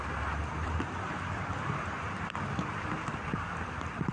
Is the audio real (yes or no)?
no